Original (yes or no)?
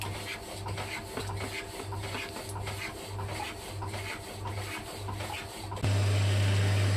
yes